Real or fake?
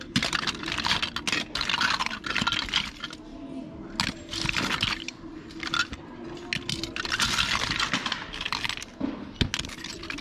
real